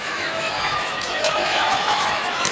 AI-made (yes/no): yes